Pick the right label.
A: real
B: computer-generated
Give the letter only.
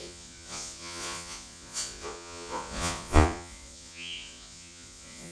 B